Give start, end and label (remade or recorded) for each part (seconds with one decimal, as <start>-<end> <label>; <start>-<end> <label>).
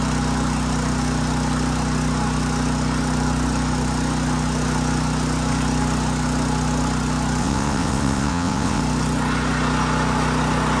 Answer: 0.0-7.4 recorded; 7.4-8.8 remade; 8.8-10.8 recorded